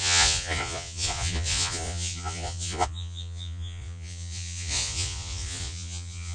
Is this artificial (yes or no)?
yes